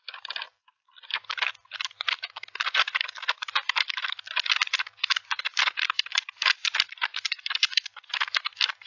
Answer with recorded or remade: recorded